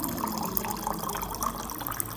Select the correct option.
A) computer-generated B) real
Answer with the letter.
B